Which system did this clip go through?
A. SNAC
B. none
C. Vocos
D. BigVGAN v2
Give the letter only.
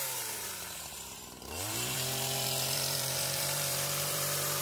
D